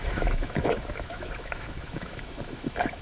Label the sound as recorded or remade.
remade